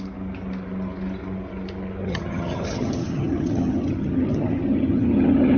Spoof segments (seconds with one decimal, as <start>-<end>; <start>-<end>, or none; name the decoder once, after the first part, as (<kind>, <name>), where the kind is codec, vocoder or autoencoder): 2.0-5.6 (vocoder, HiFi-GAN)